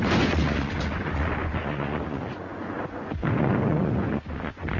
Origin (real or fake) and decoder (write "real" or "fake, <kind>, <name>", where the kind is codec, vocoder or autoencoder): fake, vocoder, Vocos